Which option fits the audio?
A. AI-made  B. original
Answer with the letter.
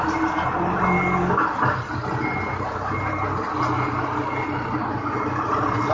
B